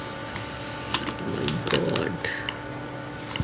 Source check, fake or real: real